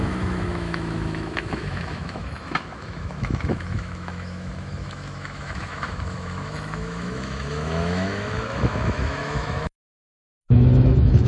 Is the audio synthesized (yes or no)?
yes